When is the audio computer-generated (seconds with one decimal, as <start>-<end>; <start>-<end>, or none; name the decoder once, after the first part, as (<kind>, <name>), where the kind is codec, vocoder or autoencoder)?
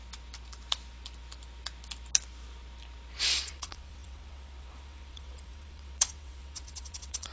3.2-7.3 (vocoder, WaveNeXt)